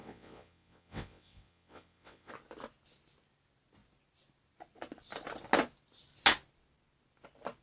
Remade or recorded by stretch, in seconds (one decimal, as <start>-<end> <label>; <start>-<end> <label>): 0.0-2.3 remade; 2.3-7.6 recorded